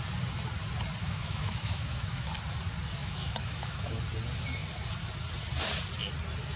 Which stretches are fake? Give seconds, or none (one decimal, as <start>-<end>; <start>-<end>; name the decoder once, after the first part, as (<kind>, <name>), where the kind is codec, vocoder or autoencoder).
1.0-2.3 (autoencoder, DAC-VAE); 3.0-4.0